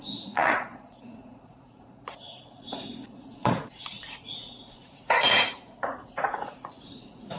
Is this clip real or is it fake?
fake